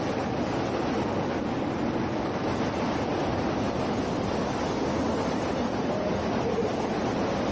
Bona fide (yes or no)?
yes